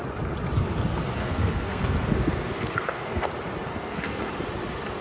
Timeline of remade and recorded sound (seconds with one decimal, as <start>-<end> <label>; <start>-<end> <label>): 0.0-1.2 recorded; 1.2-3.3 remade; 3.3-3.7 recorded; 3.7-4.3 remade; 4.3-5.0 recorded